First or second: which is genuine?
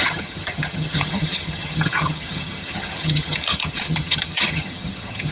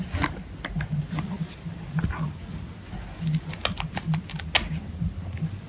second